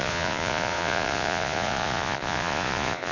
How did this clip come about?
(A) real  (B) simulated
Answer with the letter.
B